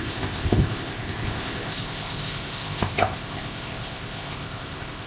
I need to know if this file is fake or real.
fake